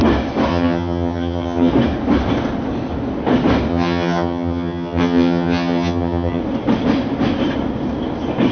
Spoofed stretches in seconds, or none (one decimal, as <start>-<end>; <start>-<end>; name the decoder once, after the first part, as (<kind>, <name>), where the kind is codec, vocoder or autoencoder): 0.5-1.7 (vocoder, HiFi-GAN); 3.7-6.4